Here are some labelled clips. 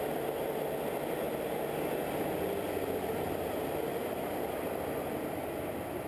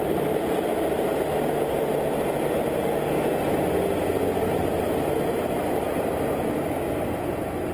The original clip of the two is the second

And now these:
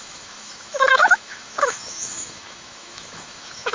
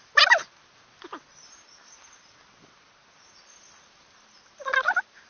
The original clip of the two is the second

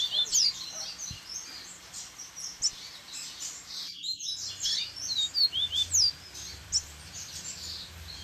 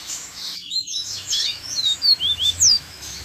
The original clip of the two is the first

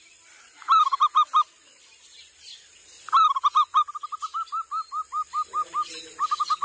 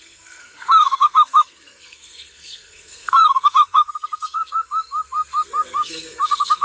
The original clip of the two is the first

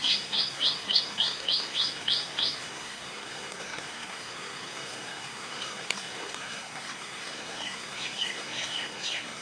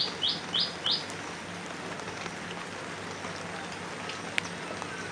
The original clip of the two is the second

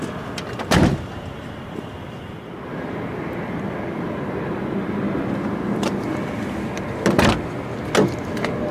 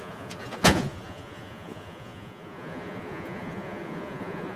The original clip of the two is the first